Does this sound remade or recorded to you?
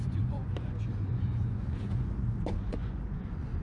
remade